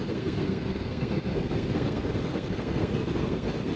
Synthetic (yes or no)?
yes